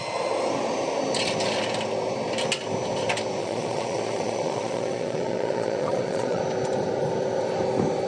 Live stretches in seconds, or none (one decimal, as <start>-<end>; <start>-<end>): 0.0-3.4; 6.4-8.1